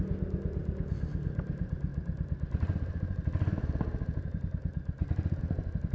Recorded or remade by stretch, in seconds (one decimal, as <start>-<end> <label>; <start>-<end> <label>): 0.0-5.9 recorded